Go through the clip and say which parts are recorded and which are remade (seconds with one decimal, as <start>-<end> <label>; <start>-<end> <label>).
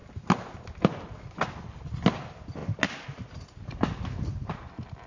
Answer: 0.0-5.1 recorded